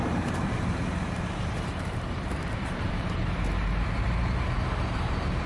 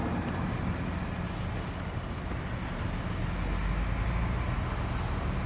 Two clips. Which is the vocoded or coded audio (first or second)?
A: first